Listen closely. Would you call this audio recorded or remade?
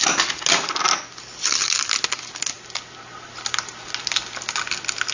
recorded